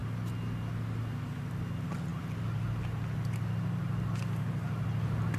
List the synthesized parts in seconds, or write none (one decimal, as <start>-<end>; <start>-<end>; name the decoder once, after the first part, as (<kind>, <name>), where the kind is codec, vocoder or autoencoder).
none